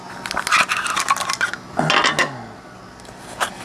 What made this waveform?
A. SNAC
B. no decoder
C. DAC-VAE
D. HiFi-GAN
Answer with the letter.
B